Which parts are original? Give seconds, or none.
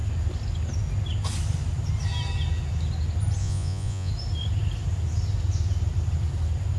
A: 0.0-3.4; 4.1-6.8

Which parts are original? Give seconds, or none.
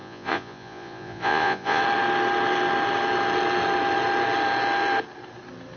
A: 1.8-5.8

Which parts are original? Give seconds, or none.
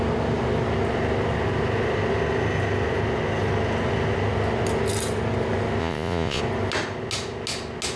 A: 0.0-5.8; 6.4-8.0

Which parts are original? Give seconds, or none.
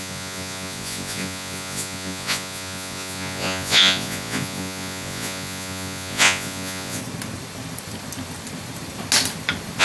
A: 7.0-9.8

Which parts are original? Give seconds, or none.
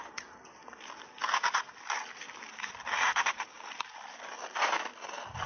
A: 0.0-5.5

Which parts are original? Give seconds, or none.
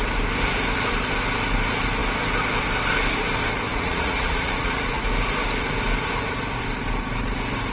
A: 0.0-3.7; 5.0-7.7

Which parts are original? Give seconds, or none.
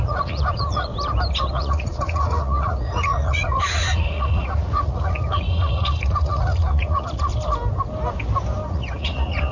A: 0.9-1.5; 7.3-8.7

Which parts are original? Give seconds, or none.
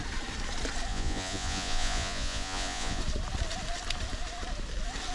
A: 0.0-0.9; 3.0-5.1